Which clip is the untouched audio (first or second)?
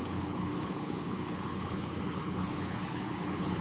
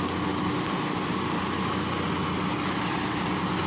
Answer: second